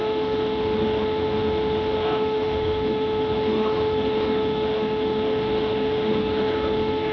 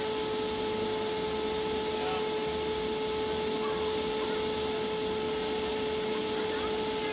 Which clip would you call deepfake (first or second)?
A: first